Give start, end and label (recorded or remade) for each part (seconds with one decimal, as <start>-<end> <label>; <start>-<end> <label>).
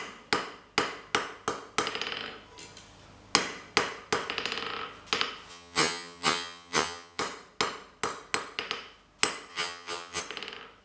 0.0-5.5 recorded; 5.5-7.2 remade; 7.2-9.5 recorded; 9.5-10.2 remade; 10.2-10.8 recorded